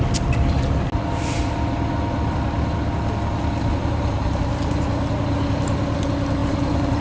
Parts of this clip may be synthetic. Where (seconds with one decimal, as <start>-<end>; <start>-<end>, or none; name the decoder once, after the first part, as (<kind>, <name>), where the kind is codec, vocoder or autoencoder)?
3.8-4.8 (vocoder, BigVGAN v2); 6.4-7.0